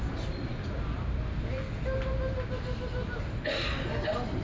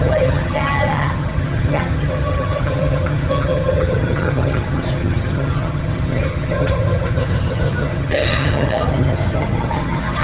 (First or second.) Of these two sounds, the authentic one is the first